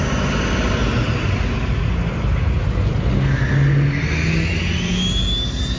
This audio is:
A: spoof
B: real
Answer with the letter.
B